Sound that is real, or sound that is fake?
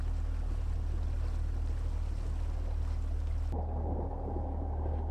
real